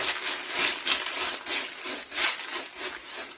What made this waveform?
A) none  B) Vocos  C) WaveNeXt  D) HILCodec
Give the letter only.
A